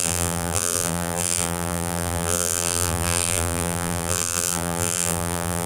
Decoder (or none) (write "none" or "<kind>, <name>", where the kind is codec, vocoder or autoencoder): vocoder, BigVGAN v2